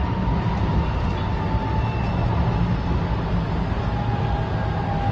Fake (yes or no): no